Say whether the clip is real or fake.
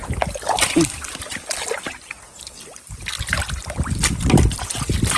real